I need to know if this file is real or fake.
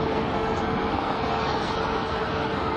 fake